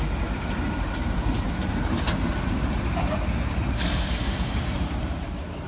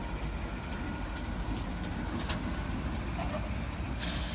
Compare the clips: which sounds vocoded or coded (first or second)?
first